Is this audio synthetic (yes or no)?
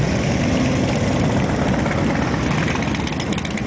no